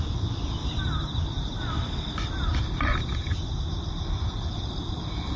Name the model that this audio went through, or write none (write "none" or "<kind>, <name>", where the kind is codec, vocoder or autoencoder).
none